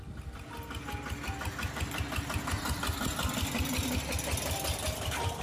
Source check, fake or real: real